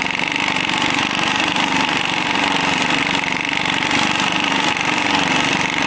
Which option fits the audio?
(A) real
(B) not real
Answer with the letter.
A